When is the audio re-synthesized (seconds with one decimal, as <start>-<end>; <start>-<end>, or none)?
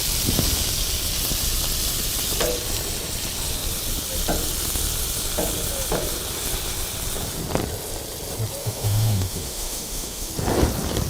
8.6-10.3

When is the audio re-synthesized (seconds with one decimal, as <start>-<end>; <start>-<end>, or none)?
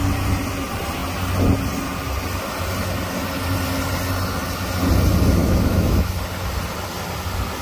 5.4-6.1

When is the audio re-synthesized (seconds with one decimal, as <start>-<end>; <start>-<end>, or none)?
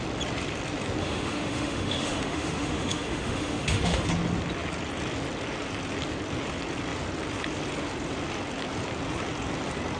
1.0-4.1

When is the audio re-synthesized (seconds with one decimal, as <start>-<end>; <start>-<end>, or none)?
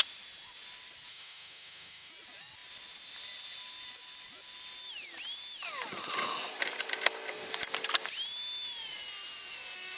1.1-2.1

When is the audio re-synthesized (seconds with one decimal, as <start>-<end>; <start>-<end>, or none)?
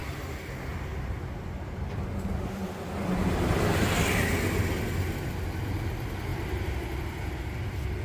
none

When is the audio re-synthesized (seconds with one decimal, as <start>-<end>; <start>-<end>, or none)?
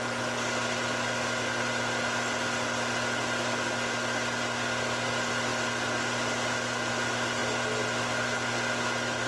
none